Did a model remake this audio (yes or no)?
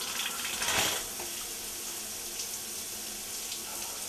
no